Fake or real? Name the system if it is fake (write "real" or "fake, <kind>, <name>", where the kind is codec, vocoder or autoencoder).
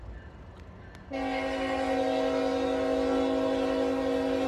real